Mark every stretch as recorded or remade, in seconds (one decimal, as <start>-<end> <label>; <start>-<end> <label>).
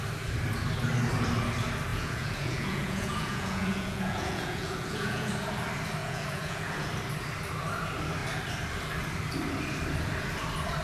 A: 0.0-1.9 recorded; 1.9-5.3 remade; 5.3-6.0 recorded; 6.0-6.9 remade; 6.9-10.8 recorded